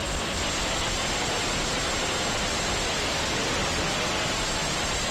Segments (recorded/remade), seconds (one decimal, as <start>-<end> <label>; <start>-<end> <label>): 0.0-5.1 recorded